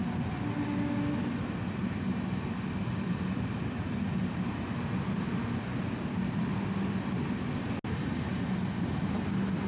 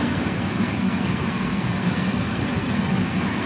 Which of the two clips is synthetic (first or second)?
second